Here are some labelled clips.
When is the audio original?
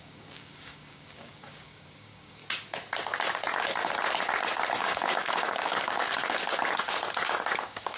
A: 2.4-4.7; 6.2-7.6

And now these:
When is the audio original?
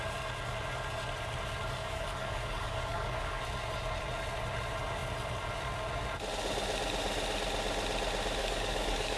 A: 0.0-1.8; 3.4-8.4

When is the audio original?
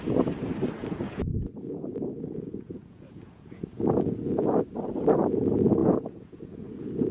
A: 0.0-0.8; 3.8-5.8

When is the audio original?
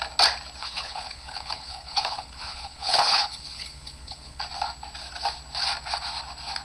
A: 0.0-0.6; 4.4-6.6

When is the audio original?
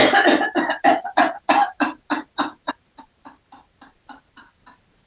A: 0.0-1.6; 4.2-5.1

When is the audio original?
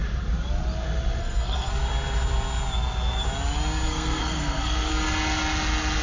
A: 0.0-1.2; 1.7-3.9; 4.9-6.0